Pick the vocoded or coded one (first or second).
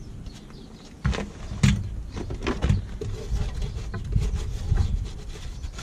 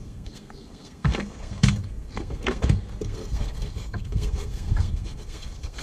second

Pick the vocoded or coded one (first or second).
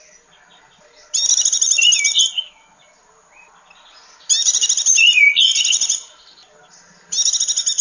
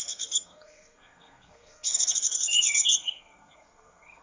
second